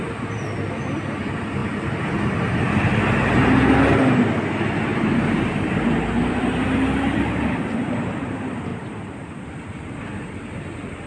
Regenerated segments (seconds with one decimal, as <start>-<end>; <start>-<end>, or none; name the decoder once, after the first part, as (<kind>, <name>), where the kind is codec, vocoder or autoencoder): 1.6-3.5 (vocoder, BigVGAN v2); 4.9-5.7; 8.7-9.5